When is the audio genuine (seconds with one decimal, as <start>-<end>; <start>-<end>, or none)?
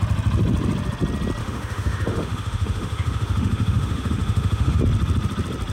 0.0-1.4; 4.8-5.7